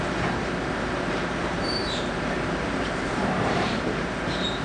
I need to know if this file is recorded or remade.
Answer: remade